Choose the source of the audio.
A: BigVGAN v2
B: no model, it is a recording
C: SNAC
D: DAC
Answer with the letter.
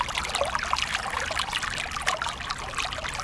B